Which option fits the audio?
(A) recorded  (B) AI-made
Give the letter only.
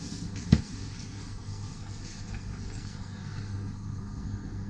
B